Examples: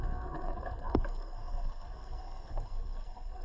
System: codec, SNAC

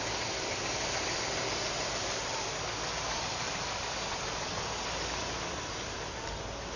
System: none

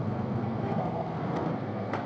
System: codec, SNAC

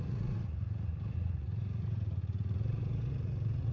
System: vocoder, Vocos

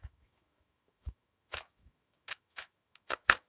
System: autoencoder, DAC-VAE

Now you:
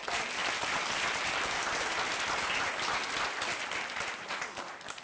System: none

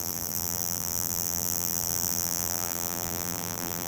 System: vocoder, BigVGAN v2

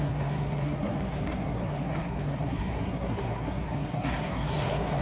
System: codec, SNAC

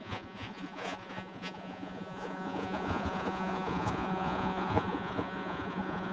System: vocoder, Vocos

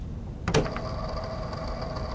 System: none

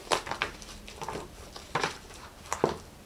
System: none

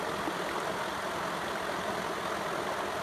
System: none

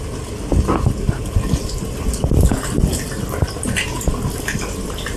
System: none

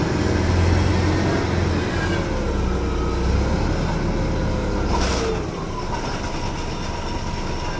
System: none